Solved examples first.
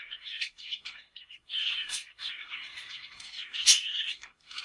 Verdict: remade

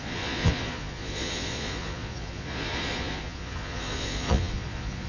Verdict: remade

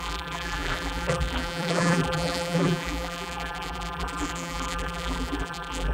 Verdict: remade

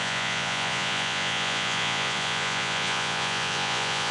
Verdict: remade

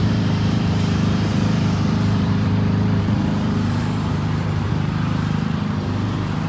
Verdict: remade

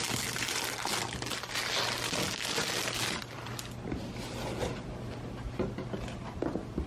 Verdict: recorded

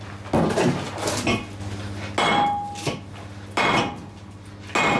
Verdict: recorded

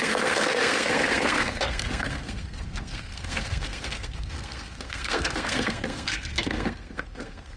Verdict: remade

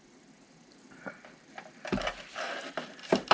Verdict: remade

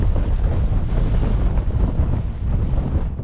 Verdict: recorded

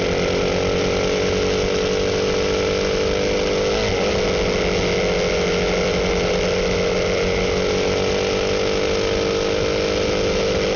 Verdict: recorded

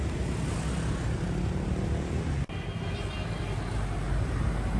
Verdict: recorded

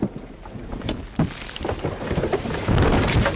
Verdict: remade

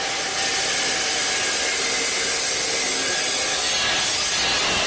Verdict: recorded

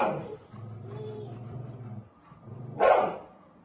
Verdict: recorded